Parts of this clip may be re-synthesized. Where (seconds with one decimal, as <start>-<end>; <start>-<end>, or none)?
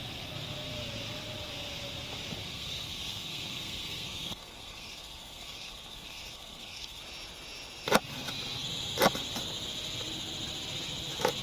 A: 2.4-7.0